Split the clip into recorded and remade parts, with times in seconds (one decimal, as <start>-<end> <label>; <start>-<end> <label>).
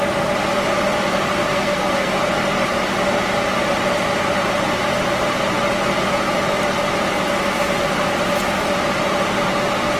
0.0-1.5 recorded; 1.5-2.1 remade; 2.1-10.0 recorded